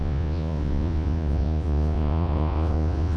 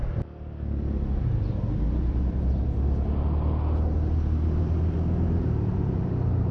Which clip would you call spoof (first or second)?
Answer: first